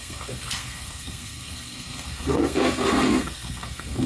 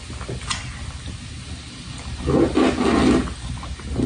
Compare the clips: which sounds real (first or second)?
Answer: second